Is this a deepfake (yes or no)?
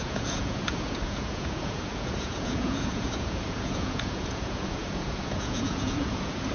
yes